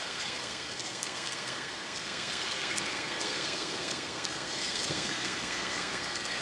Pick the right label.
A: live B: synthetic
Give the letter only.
B